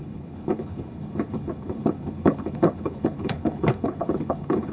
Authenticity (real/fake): fake